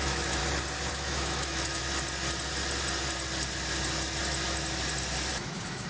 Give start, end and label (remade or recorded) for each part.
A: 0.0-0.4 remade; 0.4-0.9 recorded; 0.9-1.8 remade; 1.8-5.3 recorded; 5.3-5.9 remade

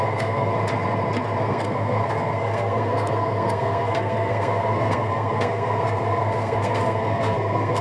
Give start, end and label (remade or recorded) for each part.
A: 0.0-0.5 remade; 0.5-1.4 recorded; 1.4-7.8 remade

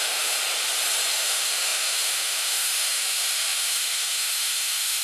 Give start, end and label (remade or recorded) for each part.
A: 0.0-0.4 remade; 0.4-1.1 recorded; 1.1-5.0 remade

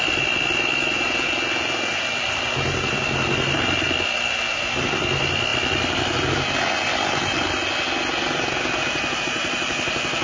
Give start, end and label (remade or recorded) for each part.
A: 0.0-10.2 recorded

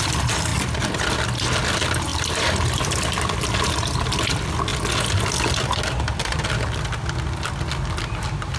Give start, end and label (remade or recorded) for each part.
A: 0.0-2.1 recorded; 2.1-3.3 remade; 3.3-8.6 recorded